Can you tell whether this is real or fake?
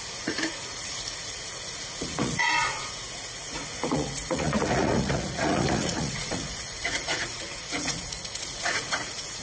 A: fake